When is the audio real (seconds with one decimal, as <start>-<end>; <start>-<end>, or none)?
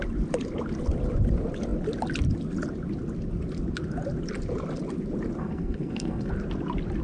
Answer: 0.0-5.4; 6.3-7.0